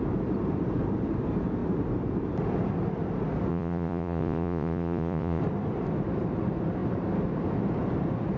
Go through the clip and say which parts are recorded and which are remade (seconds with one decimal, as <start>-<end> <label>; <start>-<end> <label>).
0.0-3.5 recorded; 3.5-5.4 remade; 5.4-8.4 recorded